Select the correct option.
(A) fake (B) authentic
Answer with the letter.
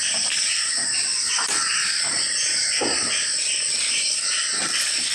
B